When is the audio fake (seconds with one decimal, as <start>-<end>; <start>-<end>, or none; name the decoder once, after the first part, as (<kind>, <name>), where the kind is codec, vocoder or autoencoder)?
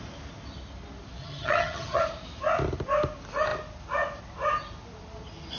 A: 1.2-2.0 (vocoder, HiFi-GAN)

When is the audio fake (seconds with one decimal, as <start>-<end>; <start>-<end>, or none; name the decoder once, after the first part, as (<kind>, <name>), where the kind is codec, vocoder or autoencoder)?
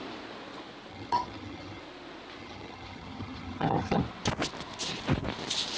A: 0.9-1.8 (vocoder, HiFi-GAN); 2.4-4.0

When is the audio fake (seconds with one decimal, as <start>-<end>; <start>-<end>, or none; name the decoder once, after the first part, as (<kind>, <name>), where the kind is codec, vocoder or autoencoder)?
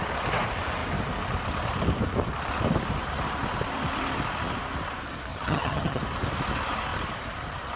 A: 5.3-6.0 (vocoder, HiFi-GAN)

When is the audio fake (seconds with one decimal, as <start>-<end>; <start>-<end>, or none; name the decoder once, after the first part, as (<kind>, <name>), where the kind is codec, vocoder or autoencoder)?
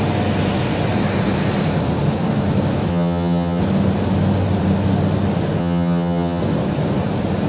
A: 2.9-3.6 (vocoder, HiFi-GAN); 5.6-6.4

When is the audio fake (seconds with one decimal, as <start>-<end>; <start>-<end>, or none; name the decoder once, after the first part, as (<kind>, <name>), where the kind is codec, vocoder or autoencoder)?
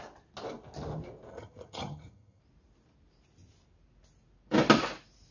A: 1.3-2.4 (vocoder, HiFi-GAN)